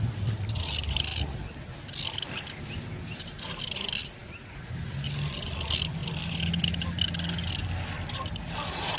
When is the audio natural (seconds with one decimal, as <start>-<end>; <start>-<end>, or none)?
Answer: 0.0-9.0